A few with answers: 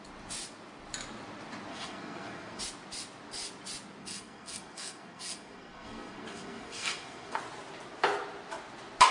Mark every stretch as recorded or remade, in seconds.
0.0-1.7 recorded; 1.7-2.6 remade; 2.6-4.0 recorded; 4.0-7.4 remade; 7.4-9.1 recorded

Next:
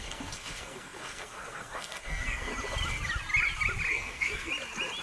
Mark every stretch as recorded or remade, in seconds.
0.0-2.5 remade; 2.5-3.9 recorded; 3.9-4.5 remade; 4.5-5.0 recorded

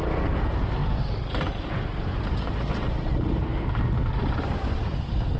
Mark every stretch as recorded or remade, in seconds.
0.0-4.8 recorded; 4.8-5.4 remade

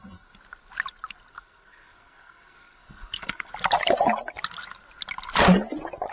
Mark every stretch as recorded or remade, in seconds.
0.0-1.3 recorded; 1.3-3.5 remade; 3.5-6.1 recorded

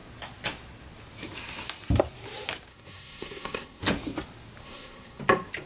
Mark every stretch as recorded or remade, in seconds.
0.0-2.7 recorded; 2.7-3.8 remade; 3.8-4.6 recorded; 4.6-5.2 remade; 5.2-5.7 recorded

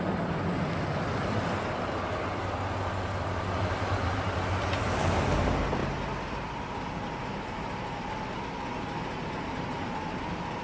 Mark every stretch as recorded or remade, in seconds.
0.0-10.6 recorded